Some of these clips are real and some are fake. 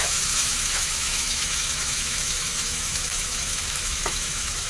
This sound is fake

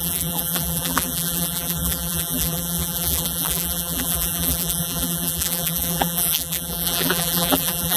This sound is fake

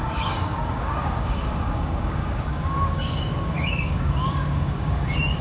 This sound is fake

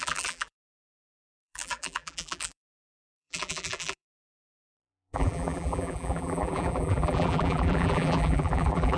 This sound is fake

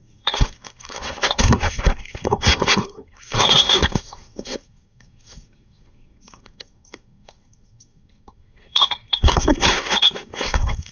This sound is fake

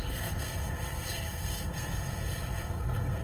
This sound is fake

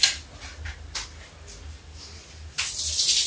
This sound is real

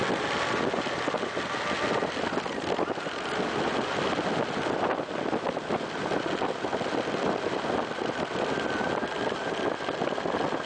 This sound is real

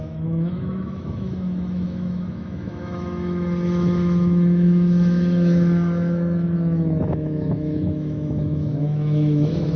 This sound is fake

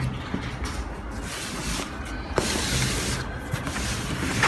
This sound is real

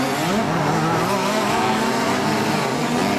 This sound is real